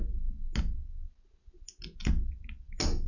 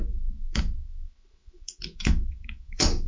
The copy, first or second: second